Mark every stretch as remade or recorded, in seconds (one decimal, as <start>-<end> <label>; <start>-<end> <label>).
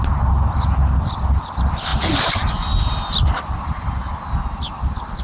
0.0-5.2 recorded